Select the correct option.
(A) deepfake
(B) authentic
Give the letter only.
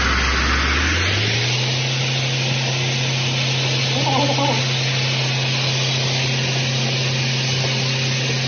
B